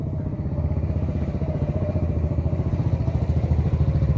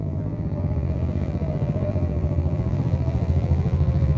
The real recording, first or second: first